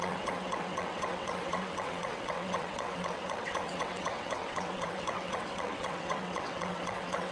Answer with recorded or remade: remade